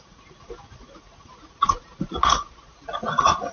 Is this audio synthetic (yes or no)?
yes